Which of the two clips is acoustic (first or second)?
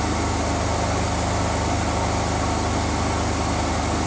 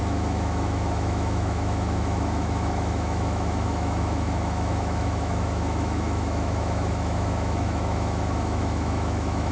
first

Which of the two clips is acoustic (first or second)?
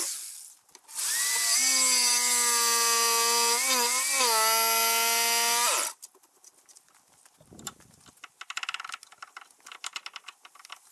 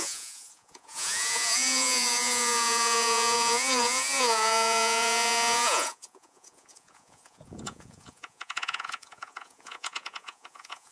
first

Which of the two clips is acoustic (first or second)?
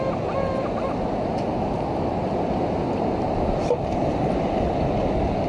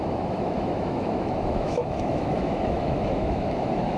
first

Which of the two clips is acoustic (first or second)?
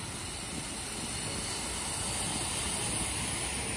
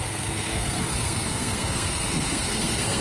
first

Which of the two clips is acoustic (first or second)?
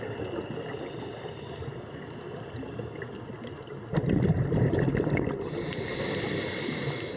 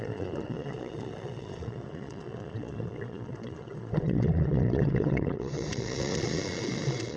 first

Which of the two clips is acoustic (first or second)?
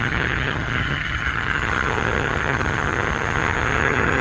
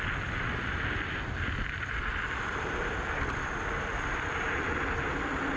second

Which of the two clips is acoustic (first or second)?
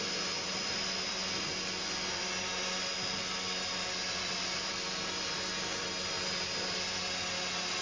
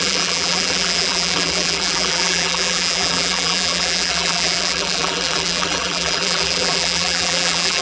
first